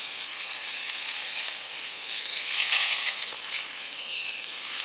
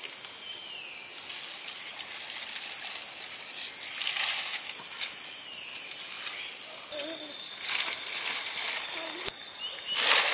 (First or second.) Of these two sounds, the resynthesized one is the first